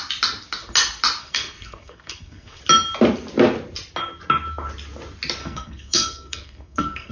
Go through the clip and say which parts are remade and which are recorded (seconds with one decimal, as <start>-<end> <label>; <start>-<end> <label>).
0.0-1.2 recorded; 1.2-2.6 remade; 2.6-5.4 recorded; 5.4-7.1 remade

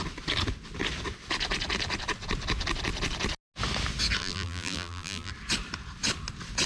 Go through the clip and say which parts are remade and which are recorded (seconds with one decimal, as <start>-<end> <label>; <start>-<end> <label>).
0.0-4.2 recorded; 4.2-5.3 remade; 5.3-6.7 recorded

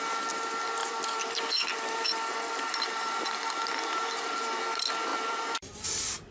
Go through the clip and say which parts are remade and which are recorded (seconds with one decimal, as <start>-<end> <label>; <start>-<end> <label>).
0.0-0.8 recorded; 0.8-4.6 remade; 4.6-5.1 recorded; 5.1-6.3 remade

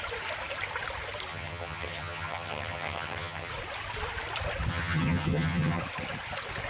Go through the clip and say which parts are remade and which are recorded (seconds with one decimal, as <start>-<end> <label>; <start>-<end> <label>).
0.0-1.3 recorded; 1.3-3.5 remade; 3.5-4.7 recorded; 4.7-5.8 remade; 5.8-6.7 recorded

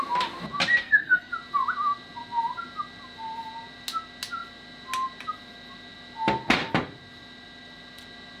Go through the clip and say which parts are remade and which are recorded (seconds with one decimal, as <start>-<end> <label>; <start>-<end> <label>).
0.0-0.8 recorded; 0.8-1.3 remade; 1.3-8.4 recorded

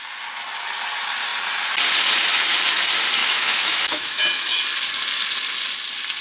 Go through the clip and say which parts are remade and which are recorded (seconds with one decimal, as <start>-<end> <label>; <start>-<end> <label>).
0.0-3.2 recorded; 3.2-4.6 remade; 4.6-6.2 recorded

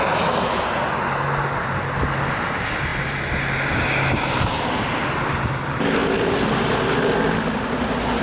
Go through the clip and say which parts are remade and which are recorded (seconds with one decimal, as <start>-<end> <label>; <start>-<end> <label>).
0.0-8.2 recorded